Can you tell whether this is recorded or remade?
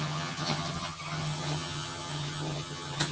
remade